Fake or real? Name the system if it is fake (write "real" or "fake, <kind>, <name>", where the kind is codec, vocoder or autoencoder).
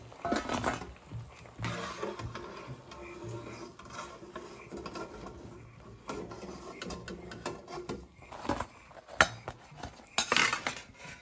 real